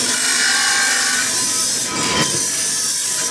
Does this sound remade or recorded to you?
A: remade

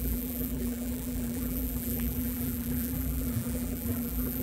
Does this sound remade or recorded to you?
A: remade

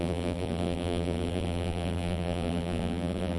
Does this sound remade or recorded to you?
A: remade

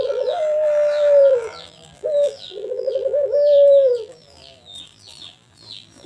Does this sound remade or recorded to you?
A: remade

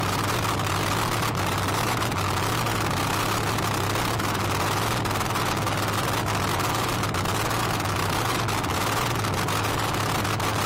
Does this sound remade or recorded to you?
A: recorded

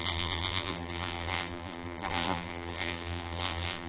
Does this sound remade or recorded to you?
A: remade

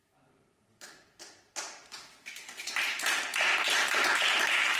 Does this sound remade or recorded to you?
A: remade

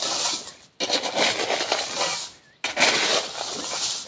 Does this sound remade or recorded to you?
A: recorded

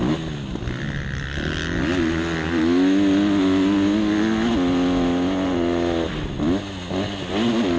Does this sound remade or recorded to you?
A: recorded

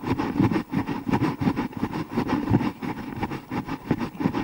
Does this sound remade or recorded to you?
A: recorded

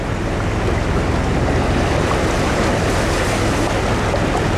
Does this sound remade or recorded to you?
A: recorded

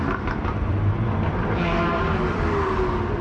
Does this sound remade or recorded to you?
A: remade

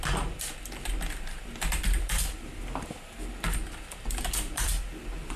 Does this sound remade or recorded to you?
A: remade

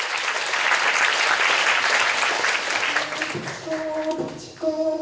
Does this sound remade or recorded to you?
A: recorded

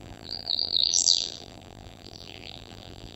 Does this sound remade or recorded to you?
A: remade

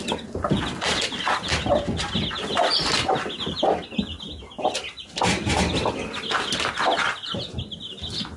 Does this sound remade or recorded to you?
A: recorded